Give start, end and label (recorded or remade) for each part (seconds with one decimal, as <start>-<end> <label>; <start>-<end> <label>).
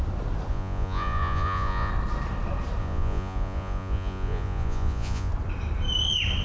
0.0-0.5 recorded; 0.5-1.9 remade; 1.9-2.8 recorded; 2.8-5.3 remade; 5.3-6.4 recorded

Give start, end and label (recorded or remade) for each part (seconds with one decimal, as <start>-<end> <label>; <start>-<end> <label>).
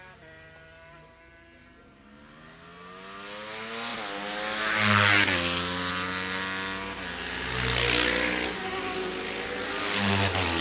0.0-10.6 recorded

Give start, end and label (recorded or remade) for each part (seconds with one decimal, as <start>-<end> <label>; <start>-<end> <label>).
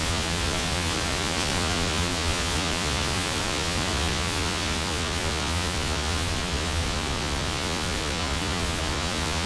0.0-9.5 remade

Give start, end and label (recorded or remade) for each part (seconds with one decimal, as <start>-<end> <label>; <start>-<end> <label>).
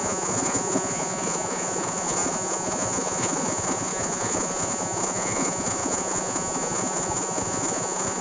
0.0-8.2 remade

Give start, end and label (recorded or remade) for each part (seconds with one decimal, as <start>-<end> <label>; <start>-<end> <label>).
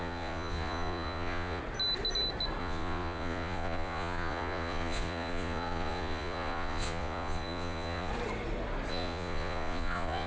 0.0-1.6 remade; 1.6-2.6 recorded; 2.6-8.1 remade; 8.1-8.9 recorded; 8.9-10.3 remade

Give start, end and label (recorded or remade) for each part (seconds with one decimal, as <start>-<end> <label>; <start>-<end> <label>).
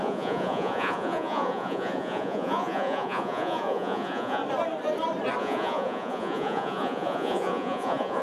0.0-4.4 remade; 4.4-5.4 recorded; 5.4-8.2 remade